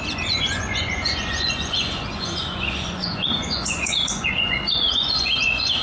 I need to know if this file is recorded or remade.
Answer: remade